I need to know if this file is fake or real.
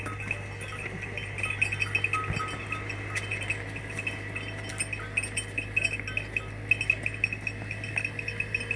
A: real